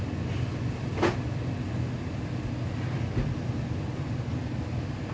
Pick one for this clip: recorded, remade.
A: recorded